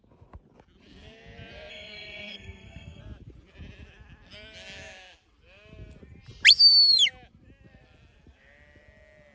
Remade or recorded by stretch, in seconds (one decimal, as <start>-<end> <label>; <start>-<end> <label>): 0.0-1.7 recorded; 1.7-3.0 remade; 3.0-9.3 recorded